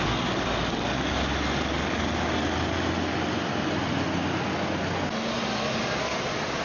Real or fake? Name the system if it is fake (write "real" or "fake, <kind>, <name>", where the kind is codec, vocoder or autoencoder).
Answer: real